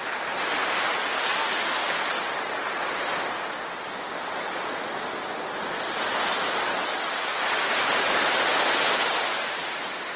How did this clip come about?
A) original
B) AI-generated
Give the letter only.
A